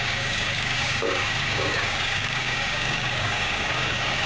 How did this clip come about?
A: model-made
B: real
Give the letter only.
A